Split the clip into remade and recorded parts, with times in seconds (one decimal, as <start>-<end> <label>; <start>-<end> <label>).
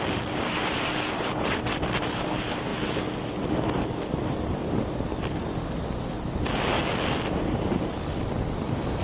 0.0-9.0 recorded